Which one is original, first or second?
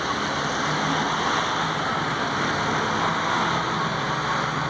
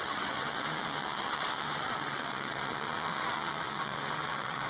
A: first